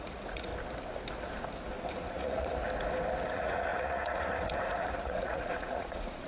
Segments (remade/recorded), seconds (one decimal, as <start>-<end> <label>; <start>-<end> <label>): 0.0-0.5 remade; 0.5-1.9 recorded; 1.9-2.6 remade; 2.6-3.3 recorded; 3.3-6.3 remade